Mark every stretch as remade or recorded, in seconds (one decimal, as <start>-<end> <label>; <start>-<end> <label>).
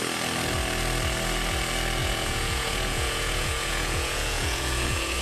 0.0-2.0 recorded; 2.0-5.2 remade